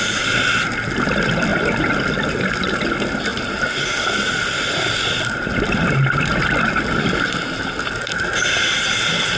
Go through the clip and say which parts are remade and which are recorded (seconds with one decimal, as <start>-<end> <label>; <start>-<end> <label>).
0.0-9.4 recorded

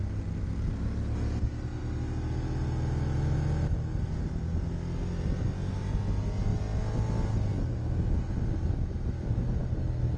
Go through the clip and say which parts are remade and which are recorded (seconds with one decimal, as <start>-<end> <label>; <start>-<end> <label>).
0.0-10.2 recorded

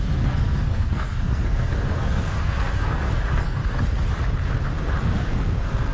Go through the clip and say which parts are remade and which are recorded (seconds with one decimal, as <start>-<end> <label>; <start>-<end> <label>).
0.0-3.6 remade; 3.6-5.0 recorded; 5.0-5.9 remade

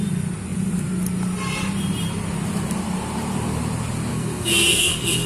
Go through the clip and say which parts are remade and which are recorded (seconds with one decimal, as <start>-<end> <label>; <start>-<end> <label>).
0.0-4.1 recorded; 4.1-5.3 remade

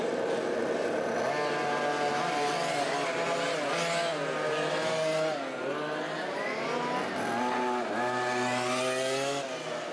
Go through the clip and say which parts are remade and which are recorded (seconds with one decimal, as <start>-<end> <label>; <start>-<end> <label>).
0.0-9.9 recorded

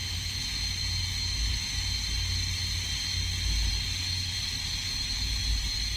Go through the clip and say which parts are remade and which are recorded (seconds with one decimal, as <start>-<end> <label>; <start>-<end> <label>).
0.0-6.0 recorded

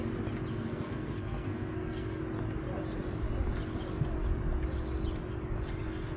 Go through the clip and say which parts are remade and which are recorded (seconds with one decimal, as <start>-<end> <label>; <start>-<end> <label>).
0.0-0.5 recorded; 0.5-2.2 remade; 2.2-6.2 recorded

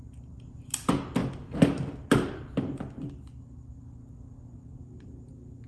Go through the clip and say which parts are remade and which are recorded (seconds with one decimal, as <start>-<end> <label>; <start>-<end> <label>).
0.0-5.7 recorded